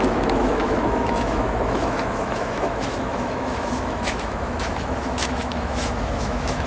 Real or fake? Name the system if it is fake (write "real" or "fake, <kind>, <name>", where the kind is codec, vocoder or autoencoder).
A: fake, autoencoder, DAC-VAE